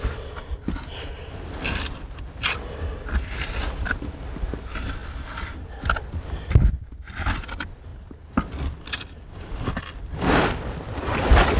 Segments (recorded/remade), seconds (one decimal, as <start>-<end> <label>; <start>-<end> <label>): 0.0-11.6 recorded